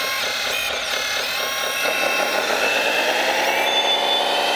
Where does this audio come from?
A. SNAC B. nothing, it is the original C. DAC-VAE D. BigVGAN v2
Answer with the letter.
B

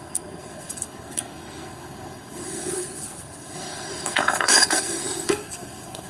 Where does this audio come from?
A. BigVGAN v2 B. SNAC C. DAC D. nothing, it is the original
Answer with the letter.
B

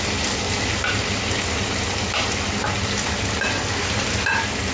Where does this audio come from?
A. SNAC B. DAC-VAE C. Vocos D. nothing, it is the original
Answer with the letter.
D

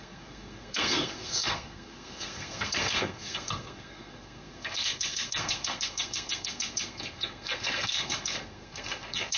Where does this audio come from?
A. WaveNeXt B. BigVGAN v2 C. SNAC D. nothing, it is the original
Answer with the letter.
C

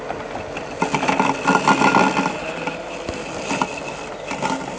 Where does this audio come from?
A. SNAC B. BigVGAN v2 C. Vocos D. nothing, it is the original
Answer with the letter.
D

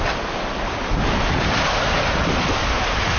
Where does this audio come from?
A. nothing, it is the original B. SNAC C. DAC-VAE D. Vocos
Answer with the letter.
A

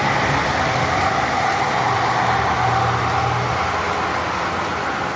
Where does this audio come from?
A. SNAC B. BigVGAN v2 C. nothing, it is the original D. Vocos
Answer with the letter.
C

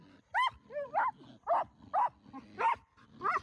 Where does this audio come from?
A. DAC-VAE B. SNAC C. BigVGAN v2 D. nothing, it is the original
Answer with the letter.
D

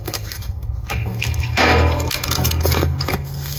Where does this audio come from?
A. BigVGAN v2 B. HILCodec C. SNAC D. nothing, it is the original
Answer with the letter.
C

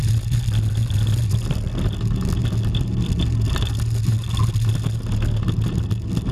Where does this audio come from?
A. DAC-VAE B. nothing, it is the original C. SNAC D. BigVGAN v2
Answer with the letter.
B